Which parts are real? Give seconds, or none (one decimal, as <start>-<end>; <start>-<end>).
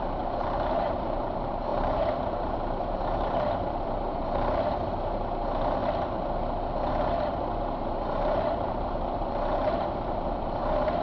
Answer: 5.8-6.9